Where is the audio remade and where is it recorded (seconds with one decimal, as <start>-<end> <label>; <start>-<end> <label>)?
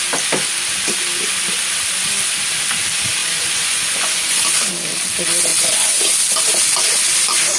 0.0-3.2 recorded; 3.2-4.4 remade; 4.4-5.5 recorded; 5.5-6.1 remade; 6.1-7.6 recorded